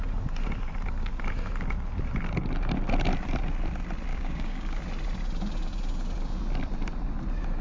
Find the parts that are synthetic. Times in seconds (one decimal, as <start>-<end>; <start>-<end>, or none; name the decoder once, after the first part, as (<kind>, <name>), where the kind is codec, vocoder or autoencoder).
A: 4.1-4.8 (codec, DAC)